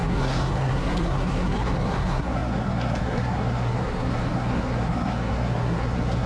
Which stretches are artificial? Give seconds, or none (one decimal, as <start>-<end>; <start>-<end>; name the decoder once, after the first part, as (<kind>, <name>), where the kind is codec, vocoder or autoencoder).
0.0-6.3 (codec, SNAC)